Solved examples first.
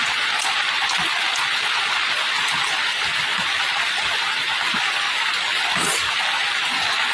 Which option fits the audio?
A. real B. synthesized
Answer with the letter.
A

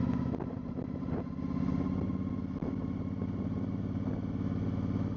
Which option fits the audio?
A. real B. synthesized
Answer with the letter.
A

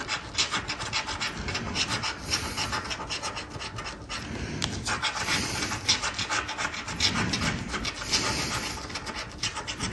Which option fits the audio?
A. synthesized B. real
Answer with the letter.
B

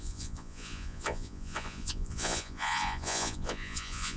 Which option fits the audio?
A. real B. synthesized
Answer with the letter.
B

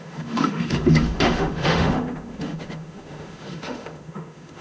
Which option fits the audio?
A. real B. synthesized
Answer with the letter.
B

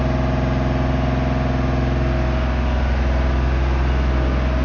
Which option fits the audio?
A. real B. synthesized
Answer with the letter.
A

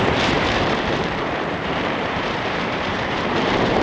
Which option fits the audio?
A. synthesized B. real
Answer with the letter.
A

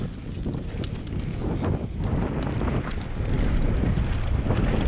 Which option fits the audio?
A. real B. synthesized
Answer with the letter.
A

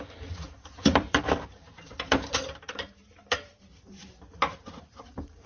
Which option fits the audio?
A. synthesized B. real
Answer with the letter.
A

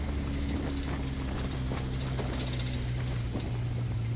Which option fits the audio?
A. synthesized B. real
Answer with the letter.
B